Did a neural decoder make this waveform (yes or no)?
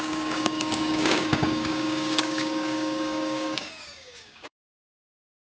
yes